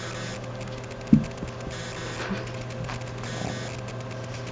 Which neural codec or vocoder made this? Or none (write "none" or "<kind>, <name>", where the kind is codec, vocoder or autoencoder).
none